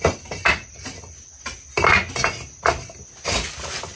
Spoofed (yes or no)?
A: no